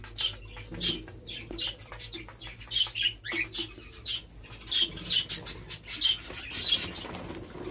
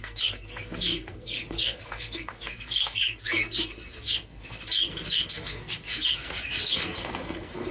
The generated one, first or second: second